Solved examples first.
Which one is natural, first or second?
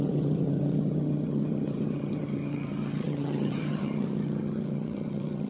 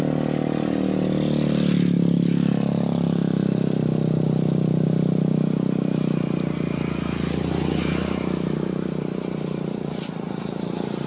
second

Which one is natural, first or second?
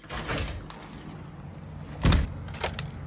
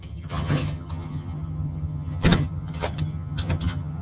first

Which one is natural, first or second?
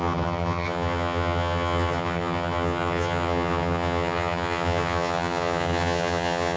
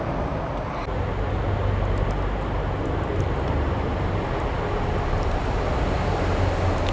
second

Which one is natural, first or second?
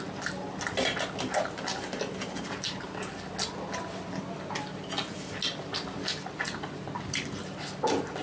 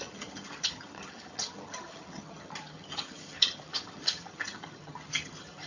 first